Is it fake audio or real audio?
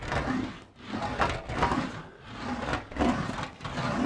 real